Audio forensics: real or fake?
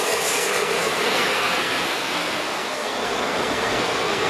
fake